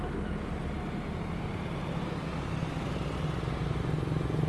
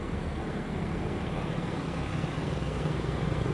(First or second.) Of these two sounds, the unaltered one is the first